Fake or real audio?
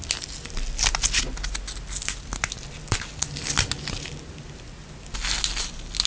real